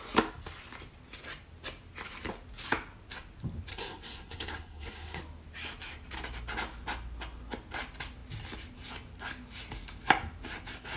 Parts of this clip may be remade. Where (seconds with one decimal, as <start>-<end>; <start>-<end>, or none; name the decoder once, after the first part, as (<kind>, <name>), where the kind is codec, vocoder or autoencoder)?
3.7-5.2 (codec, SNAC)